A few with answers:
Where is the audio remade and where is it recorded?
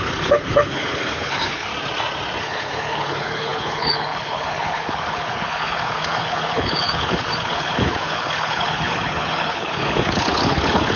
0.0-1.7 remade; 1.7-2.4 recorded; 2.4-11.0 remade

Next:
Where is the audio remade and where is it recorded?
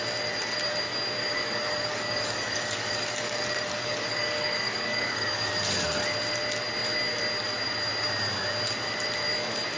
0.0-1.2 recorded; 1.2-5.5 remade; 5.5-9.8 recorded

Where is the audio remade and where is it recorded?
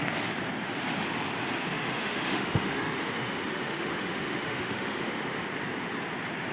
0.0-1.7 recorded; 1.7-5.5 remade; 5.5-6.5 recorded